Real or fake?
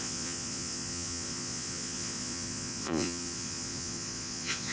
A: fake